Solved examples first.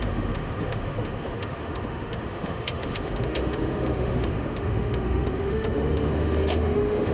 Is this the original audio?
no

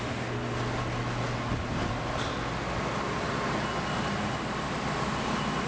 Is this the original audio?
yes